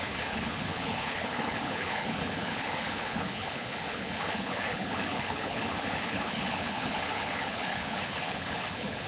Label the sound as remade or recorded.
remade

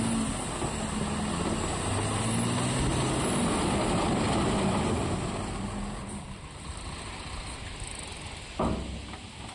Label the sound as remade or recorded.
recorded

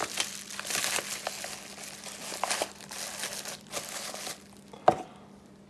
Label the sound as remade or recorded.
recorded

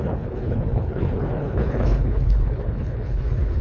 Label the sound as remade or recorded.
remade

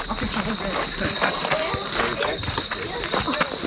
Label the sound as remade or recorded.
recorded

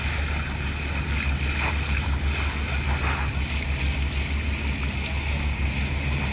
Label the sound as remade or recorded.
recorded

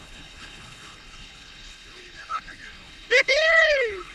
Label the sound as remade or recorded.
remade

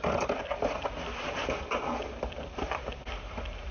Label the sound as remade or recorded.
recorded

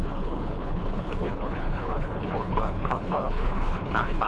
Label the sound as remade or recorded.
remade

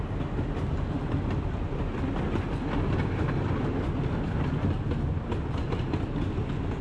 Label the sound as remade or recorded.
recorded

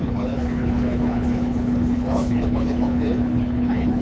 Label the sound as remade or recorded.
remade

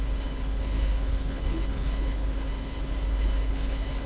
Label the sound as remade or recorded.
remade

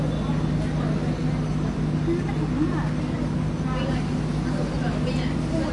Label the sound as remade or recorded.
recorded